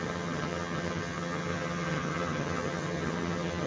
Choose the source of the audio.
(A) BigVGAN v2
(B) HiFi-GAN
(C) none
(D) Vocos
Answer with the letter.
B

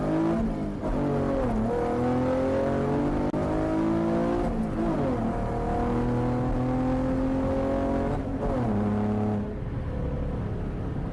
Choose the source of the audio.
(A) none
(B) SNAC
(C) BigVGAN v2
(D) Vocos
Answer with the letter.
A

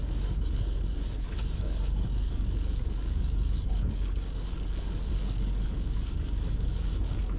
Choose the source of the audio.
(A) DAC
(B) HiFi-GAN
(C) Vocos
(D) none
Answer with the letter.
A